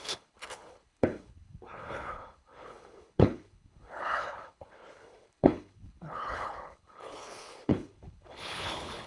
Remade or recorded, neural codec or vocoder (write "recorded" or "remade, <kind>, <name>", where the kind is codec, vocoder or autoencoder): remade, codec, HILCodec